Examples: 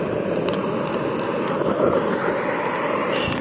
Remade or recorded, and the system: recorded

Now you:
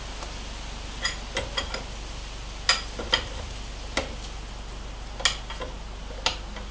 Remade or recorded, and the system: recorded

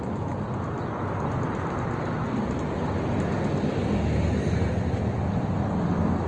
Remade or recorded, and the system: recorded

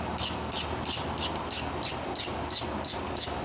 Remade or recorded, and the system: recorded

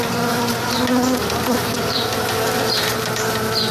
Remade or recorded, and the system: recorded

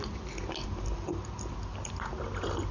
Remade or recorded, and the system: recorded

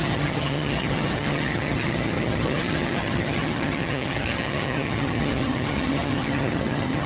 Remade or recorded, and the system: remade, vocoder, HiFi-GAN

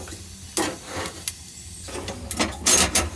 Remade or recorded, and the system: recorded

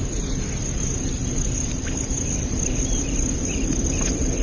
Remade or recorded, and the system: recorded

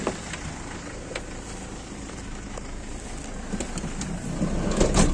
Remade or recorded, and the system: recorded